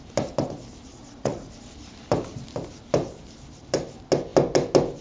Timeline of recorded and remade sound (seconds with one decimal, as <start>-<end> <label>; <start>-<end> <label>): 0.0-0.9 recorded; 0.9-1.5 remade; 1.5-5.0 recorded